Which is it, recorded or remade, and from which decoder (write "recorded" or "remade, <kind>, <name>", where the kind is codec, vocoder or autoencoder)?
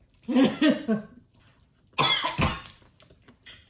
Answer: recorded